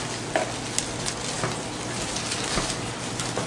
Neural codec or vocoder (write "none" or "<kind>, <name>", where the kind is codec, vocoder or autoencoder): none